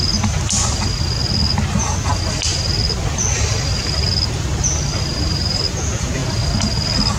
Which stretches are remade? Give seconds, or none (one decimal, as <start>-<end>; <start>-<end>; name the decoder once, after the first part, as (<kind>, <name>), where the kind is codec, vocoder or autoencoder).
5.1-5.6 (vocoder, BigVGAN v2)